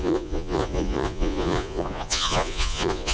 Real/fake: fake